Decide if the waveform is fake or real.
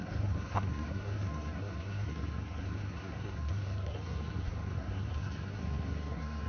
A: fake